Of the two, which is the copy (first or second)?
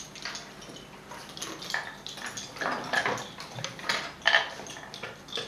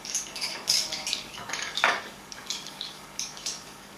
second